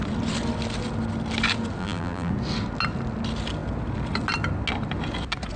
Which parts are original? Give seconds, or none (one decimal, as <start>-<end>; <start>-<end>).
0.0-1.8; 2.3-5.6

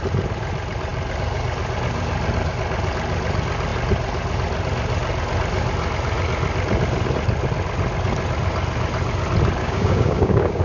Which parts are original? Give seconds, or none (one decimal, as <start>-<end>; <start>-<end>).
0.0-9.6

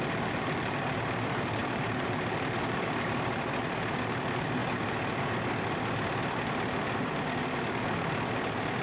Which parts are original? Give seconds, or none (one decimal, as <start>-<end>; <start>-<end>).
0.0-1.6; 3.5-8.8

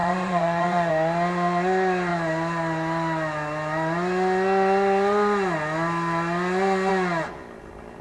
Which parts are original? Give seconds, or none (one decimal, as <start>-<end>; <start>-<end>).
0.9-8.0

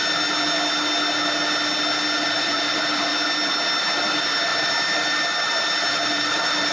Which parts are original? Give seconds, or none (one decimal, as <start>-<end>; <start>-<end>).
0.0-2.2; 3.1-3.8